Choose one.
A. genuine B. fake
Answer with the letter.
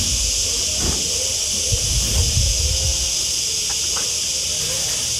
A